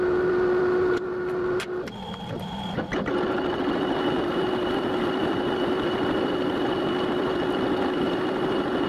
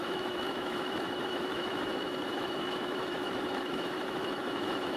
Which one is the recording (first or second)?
first